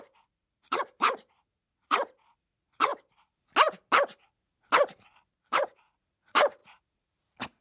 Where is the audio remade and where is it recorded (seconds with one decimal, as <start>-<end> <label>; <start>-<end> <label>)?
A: 0.0-2.9 remade; 2.9-5.4 recorded; 5.4-7.6 remade